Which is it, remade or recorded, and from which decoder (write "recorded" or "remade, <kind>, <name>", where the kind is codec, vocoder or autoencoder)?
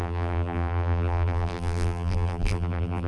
remade, vocoder, BigVGAN v2